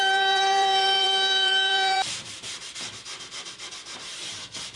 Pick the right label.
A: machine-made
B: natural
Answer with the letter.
A